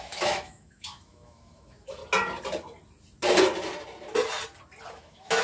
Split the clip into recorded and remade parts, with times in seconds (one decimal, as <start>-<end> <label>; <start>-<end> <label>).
0.0-2.0 remade; 2.0-4.9 recorded; 4.9-5.4 remade